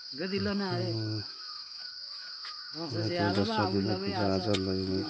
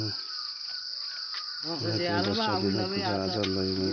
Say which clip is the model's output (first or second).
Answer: first